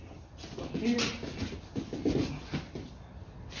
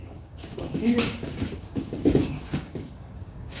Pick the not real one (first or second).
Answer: second